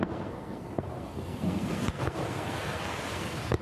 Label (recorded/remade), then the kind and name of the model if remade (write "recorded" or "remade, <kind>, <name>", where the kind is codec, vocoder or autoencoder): remade, codec, SNAC